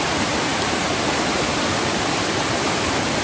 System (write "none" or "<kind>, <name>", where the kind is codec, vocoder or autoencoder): none